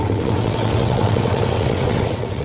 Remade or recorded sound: remade